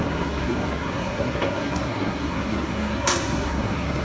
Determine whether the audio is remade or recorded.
remade